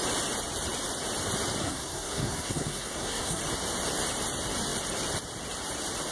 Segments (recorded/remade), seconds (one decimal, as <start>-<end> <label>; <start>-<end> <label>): 0.0-1.6 recorded; 1.6-3.4 remade; 3.4-6.1 recorded